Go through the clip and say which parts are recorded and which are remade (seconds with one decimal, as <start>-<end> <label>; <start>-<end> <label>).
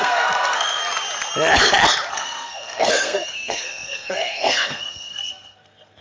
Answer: 0.0-0.8 remade; 0.8-2.1 recorded; 2.1-6.0 remade